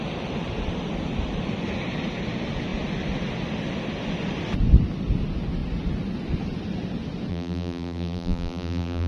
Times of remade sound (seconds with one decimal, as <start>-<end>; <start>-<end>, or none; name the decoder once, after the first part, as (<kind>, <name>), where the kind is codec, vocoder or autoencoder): 7.3-9.1 (vocoder, BigVGAN v2)